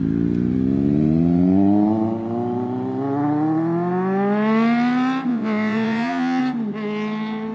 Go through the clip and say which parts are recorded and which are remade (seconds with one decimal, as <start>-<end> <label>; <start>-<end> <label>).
0.0-5.3 recorded; 5.3-6.4 remade; 6.4-7.5 recorded